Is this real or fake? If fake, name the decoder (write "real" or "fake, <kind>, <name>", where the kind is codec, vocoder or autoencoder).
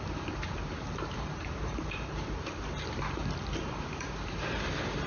fake, vocoder, BigVGAN v2